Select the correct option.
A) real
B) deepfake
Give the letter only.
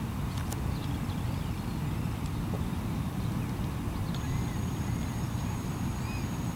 A